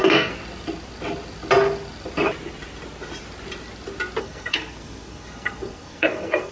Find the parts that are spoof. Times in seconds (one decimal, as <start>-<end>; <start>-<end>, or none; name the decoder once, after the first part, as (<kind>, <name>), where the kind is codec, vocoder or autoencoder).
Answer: 0.0-0.4 (codec, SNAC); 4.2-6.5